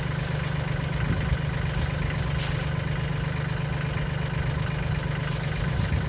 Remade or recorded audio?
recorded